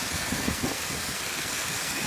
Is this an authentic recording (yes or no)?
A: no